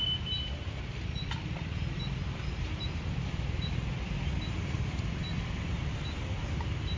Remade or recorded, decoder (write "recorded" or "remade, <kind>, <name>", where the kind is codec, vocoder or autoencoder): recorded